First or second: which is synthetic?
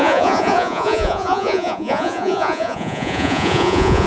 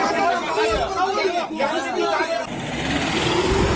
first